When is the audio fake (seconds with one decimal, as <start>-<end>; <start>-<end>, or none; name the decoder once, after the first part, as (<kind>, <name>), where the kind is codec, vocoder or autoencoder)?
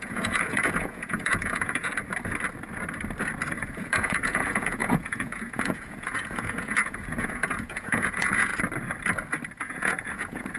0.0-1.9 (vocoder, Vocos); 3.6-8.5; 9.6-10.6